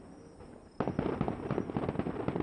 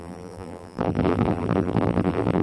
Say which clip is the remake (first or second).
second